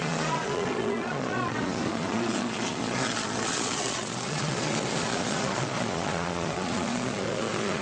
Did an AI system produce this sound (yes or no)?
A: yes